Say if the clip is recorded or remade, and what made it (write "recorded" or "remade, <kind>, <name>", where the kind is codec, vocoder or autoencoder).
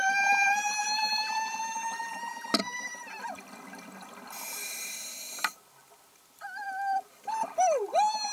recorded